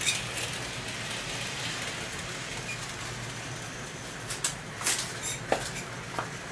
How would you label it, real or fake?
real